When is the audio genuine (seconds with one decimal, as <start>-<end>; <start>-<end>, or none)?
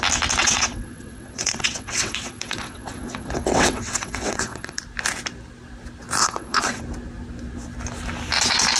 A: 0.0-0.4; 4.8-6.2; 6.8-8.8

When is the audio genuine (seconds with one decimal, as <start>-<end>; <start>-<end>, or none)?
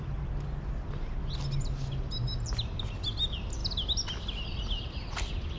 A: 0.0-5.6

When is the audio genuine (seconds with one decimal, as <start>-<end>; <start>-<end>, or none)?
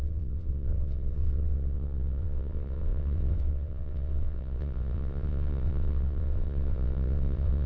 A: none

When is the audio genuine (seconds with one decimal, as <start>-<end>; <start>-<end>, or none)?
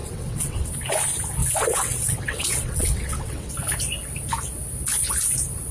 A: 0.7-1.4; 3.5-5.7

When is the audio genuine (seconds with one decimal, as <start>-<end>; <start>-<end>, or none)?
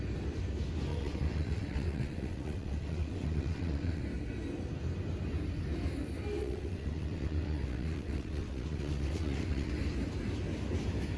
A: 0.0-0.9; 4.0-6.4; 9.7-11.2